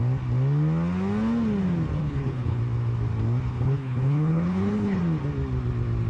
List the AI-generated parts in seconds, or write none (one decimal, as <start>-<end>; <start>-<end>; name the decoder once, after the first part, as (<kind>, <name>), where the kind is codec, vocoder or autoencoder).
2.0-2.6 (codec, HILCodec); 3.5-5.0